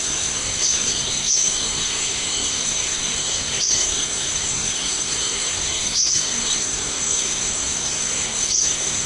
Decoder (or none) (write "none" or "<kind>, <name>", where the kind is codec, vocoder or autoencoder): codec, SNAC